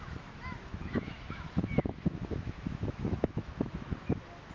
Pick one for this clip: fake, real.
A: fake